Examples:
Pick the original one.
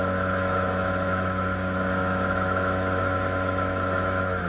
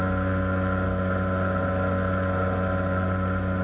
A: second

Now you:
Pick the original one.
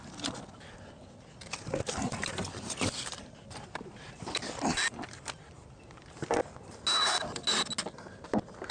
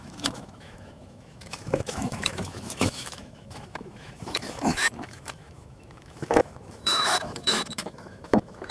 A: first